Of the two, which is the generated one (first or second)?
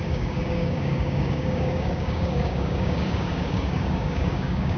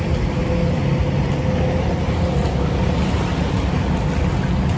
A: first